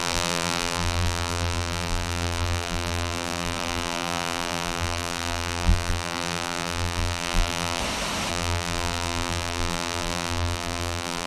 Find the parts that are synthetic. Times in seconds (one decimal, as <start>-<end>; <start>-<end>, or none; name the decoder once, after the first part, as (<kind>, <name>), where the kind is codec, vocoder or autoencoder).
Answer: 0.0-7.8 (vocoder, BigVGAN v2); 8.3-11.3